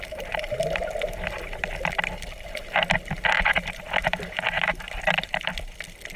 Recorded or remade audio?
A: recorded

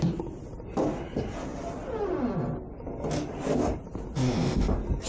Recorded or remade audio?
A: recorded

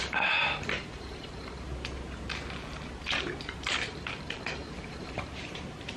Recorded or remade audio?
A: remade